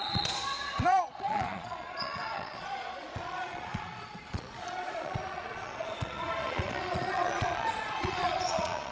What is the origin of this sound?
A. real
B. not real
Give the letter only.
B